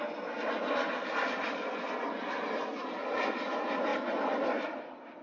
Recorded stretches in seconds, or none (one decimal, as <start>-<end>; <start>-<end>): 0.0-3.9; 4.8-5.2